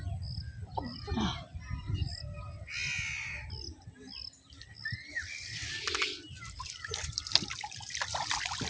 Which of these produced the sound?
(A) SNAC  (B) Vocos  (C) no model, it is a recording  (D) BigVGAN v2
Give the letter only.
C